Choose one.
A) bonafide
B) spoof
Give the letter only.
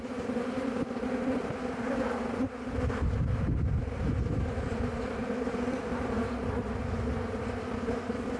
A